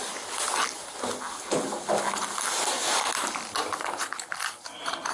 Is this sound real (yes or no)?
yes